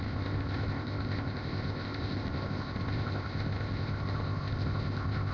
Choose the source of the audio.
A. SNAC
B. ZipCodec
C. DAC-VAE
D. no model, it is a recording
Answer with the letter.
B